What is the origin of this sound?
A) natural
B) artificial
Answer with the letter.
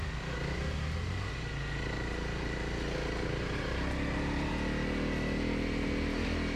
A